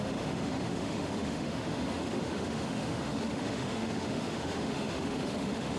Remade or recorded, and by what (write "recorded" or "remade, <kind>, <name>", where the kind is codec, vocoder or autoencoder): remade, autoencoder, DAC-VAE